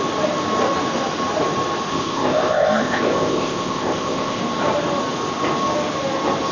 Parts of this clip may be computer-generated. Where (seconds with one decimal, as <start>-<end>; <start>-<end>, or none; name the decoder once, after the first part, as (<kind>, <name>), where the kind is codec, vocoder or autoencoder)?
1.9-4.4 (codec, ZipCodec)